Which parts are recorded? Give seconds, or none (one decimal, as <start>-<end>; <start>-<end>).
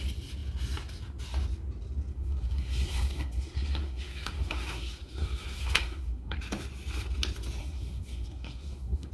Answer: 0.0-2.1; 6.4-7.6